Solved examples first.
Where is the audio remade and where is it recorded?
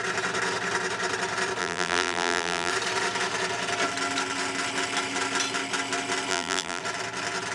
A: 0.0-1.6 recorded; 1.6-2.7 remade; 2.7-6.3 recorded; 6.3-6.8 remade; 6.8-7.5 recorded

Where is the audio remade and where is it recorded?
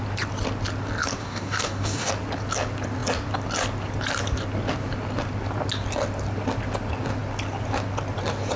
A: 0.0-1.2 recorded; 1.2-2.1 remade; 2.1-8.6 recorded